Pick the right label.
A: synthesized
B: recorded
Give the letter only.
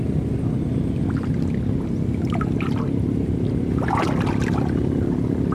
B